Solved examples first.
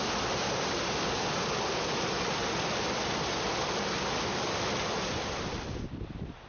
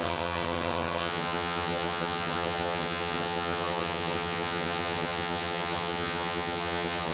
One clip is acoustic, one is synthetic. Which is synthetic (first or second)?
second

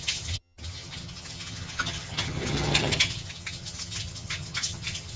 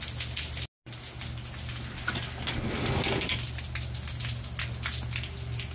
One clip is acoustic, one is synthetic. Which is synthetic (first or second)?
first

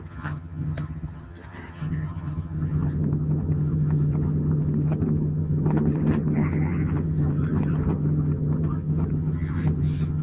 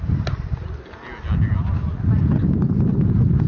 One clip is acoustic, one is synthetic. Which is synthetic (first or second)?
first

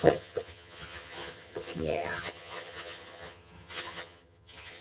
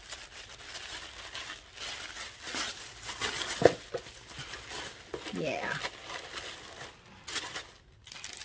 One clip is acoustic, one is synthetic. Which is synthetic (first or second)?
first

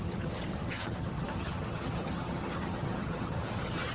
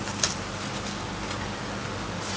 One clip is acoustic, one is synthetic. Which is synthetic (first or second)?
first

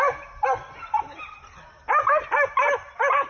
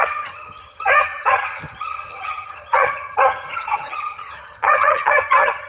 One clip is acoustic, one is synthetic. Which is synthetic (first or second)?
second